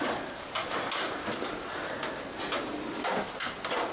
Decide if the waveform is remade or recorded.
recorded